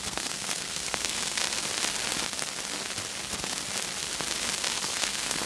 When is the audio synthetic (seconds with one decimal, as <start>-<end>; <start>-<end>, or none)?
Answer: 0.0-1.4; 4.7-5.5